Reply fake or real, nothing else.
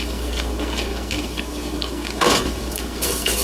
fake